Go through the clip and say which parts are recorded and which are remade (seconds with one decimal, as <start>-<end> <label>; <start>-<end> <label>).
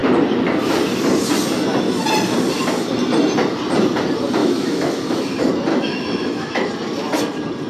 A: 0.0-4.4 recorded; 4.4-5.2 remade; 5.2-5.7 recorded; 5.7-6.7 remade; 6.7-7.7 recorded